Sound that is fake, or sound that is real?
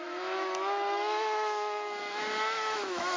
fake